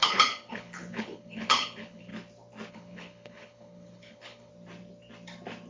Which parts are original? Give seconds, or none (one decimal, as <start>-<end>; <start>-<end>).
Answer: 2.1-2.7; 4.5-5.7